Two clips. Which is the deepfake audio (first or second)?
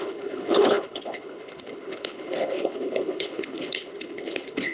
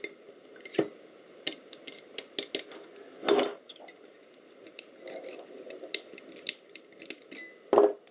first